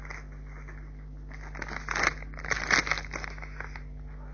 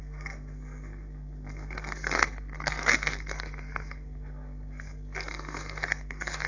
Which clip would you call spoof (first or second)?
second